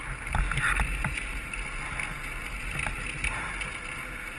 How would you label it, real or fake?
real